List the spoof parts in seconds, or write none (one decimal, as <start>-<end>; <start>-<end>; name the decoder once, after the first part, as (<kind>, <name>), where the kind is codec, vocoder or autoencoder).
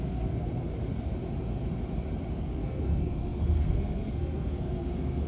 0.0-0.7 (codec, SNAC); 2.3-5.3